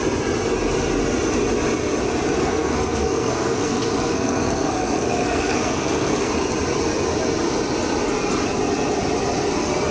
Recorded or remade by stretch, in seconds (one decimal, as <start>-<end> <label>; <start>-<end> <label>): 0.0-2.4 recorded; 2.4-6.3 remade; 6.3-9.9 recorded

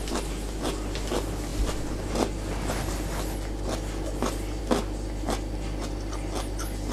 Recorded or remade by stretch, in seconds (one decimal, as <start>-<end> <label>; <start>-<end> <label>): 0.0-6.9 recorded

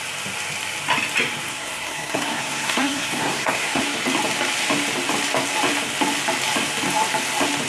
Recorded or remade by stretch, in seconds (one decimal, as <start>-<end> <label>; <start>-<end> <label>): 0.0-1.5 recorded; 1.5-3.8 remade; 3.8-7.7 recorded

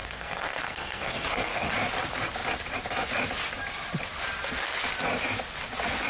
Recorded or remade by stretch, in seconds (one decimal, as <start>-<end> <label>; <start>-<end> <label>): 0.0-1.7 remade; 1.7-6.1 recorded

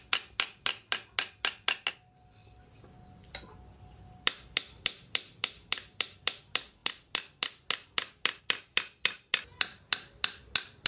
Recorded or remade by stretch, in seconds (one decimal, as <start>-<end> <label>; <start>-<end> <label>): 0.0-10.9 recorded

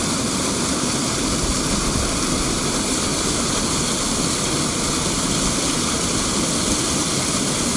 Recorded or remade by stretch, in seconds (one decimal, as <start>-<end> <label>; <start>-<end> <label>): 0.0-7.8 recorded

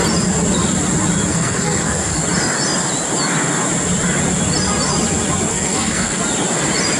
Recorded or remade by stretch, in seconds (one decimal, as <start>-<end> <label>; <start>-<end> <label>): 0.0-1.3 recorded; 1.3-2.2 remade; 2.2-5.5 recorded; 5.5-6.2 remade; 6.2-7.0 recorded